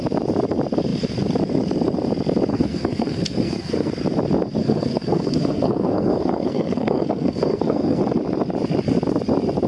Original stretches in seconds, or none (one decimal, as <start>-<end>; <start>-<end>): 0.0-2.5; 3.9-4.6; 8.0-9.7